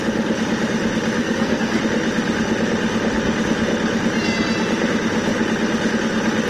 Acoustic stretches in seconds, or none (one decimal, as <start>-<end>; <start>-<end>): 0.0-1.2; 1.8-6.5